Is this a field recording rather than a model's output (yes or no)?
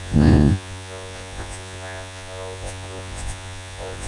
no